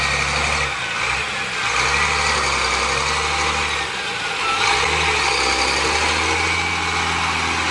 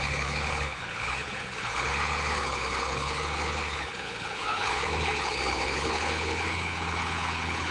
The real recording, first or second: first